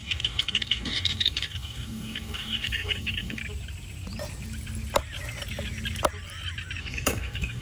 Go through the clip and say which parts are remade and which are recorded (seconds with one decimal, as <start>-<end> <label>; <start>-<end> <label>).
0.0-3.4 remade; 3.4-6.8 recorded; 6.8-7.6 remade